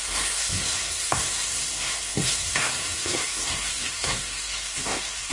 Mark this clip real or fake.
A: fake